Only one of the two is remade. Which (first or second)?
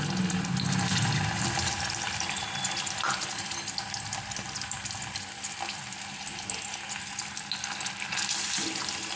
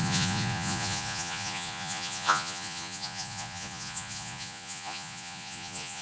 second